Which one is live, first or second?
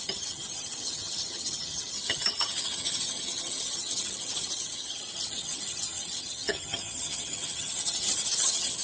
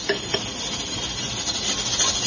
second